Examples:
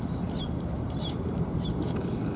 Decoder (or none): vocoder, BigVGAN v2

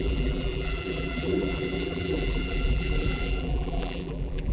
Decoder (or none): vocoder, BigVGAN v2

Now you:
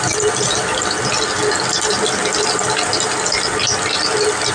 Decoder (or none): none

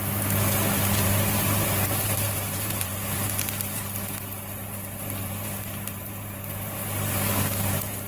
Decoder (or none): vocoder, BigVGAN v2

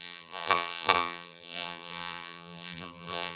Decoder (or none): vocoder, BigVGAN v2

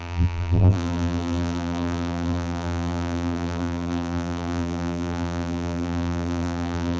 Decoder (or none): vocoder, BigVGAN v2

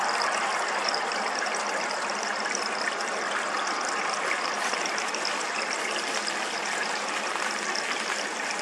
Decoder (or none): none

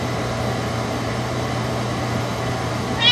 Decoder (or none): vocoder, BigVGAN v2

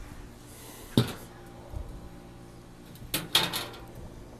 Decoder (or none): none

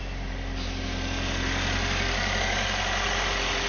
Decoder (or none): none